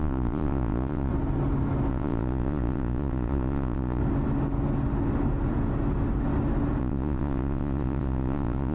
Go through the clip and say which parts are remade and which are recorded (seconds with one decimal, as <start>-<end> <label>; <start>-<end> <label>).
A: 0.0-1.1 remade; 1.1-1.9 recorded; 1.9-4.0 remade; 4.0-6.8 recorded; 6.8-8.7 remade